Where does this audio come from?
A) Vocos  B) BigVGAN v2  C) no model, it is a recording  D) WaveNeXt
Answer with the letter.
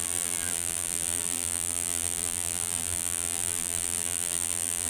B